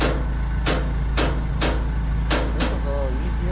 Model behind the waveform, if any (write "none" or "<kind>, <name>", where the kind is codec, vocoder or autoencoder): none